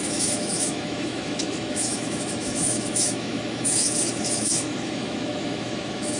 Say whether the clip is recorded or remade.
remade